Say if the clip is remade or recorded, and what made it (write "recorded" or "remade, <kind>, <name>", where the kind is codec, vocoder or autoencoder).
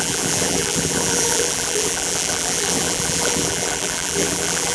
remade, vocoder, BigVGAN v2